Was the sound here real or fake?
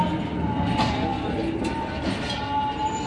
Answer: real